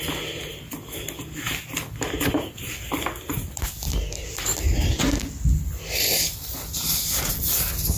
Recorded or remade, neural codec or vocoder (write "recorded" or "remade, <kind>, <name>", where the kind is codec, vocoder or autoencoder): recorded